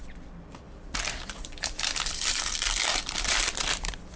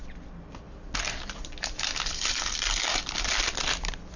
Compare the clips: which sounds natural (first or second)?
second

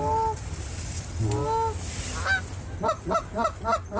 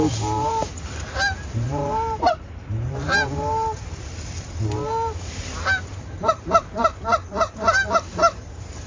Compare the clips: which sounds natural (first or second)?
first